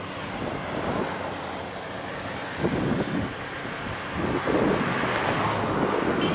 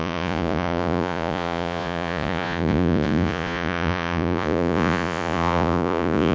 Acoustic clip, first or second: first